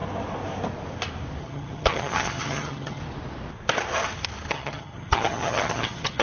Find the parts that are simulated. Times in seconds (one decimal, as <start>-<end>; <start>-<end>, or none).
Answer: 1.4-3.0; 4.5-6.2